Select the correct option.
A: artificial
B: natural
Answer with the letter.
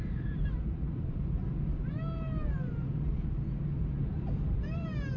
A